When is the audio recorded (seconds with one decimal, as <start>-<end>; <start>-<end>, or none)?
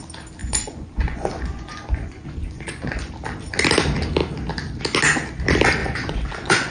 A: 0.0-0.4; 3.1-5.8